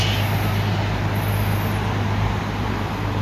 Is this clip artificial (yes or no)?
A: no